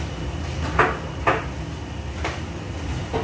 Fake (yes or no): no